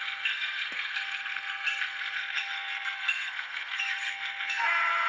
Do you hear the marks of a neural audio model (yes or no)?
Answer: yes